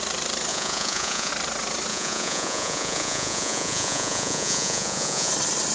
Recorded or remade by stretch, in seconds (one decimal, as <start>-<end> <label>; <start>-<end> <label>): 0.0-0.5 recorded; 0.5-1.3 remade; 1.3-1.9 recorded; 1.9-5.3 remade; 5.3-5.7 recorded